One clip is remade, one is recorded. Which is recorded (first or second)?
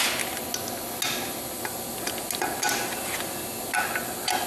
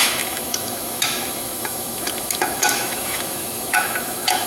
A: first